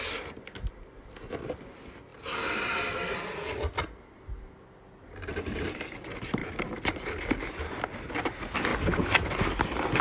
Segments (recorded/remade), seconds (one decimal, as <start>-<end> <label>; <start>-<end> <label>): 0.0-10.0 recorded